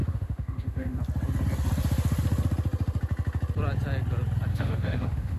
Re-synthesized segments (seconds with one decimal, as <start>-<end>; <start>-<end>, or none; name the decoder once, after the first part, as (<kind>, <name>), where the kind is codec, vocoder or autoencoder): 0.0-1.0 (autoencoder, DAC-VAE); 4.5-5.4